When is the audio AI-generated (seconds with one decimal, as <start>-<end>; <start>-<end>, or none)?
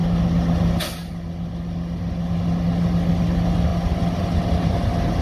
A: none